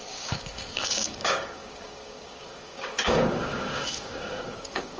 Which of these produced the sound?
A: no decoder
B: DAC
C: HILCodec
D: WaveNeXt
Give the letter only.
B